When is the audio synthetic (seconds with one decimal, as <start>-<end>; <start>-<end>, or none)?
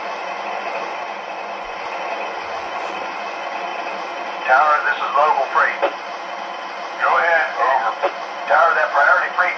0.0-3.7; 7.9-9.6